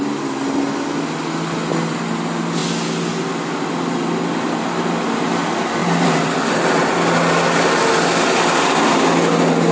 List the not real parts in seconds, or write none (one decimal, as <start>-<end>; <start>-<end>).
5.8-6.9